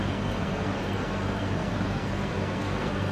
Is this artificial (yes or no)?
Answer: yes